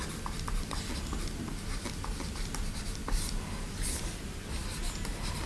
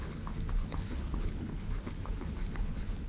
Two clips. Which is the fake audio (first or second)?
second